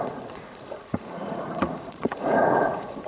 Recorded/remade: remade